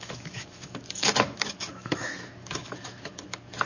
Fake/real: fake